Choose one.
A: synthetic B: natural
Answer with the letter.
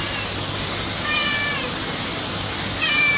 B